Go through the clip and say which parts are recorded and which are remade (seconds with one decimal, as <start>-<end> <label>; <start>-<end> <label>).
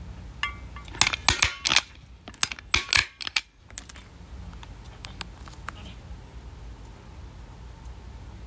0.0-8.5 recorded